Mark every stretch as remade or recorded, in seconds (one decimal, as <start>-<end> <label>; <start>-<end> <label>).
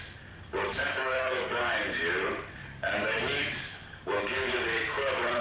0.0-0.7 recorded; 0.7-2.0 remade; 2.0-2.6 recorded; 2.6-4.5 remade; 4.5-5.4 recorded